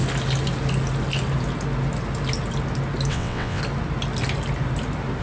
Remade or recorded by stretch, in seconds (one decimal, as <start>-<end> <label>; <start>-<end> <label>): 0.0-3.1 recorded; 3.1-3.6 remade; 3.6-5.2 recorded